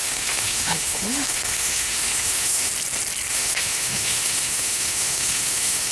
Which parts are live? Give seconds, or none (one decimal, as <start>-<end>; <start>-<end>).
2.7-3.3